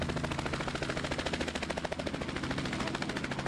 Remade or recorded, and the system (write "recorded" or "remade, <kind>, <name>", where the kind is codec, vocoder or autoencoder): recorded